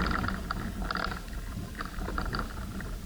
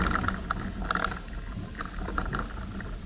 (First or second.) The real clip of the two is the second